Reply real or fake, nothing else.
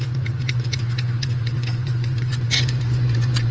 fake